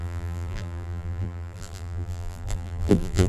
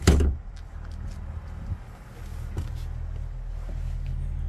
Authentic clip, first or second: second